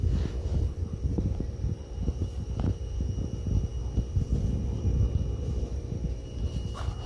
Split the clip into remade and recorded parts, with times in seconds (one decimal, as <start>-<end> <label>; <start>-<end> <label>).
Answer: 0.0-0.5 recorded; 0.5-3.0 remade; 3.0-7.1 recorded